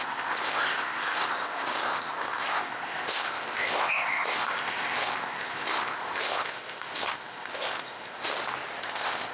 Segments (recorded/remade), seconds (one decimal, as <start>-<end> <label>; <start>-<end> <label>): 0.0-8.3 remade; 8.3-8.8 recorded; 8.8-9.3 remade